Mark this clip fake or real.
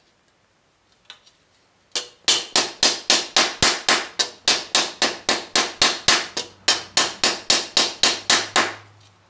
real